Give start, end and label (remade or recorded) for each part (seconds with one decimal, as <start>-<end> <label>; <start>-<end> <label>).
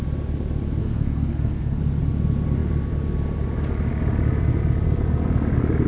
0.0-0.8 recorded; 0.8-1.8 remade; 1.8-5.9 recorded